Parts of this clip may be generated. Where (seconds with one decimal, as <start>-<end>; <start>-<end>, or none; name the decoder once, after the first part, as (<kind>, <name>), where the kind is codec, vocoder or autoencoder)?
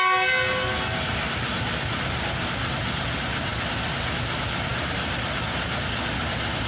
none